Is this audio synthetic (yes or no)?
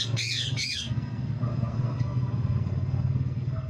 yes